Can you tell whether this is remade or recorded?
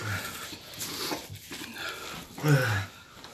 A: recorded